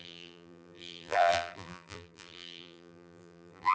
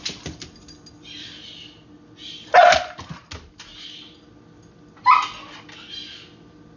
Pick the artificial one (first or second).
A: first